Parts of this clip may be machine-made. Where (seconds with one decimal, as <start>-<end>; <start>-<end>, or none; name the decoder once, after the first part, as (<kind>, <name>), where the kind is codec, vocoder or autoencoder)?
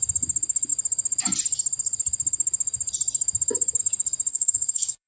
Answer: 4.3-5.1 (codec, DAC)